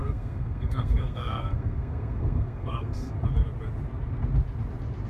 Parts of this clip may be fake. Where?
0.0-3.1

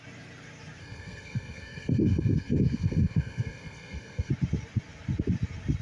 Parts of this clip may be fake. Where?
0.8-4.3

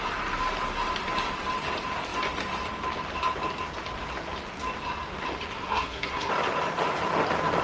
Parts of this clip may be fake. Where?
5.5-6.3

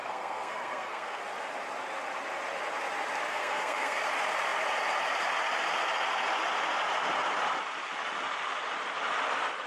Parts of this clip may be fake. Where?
0.0-1.2; 3.3-4.0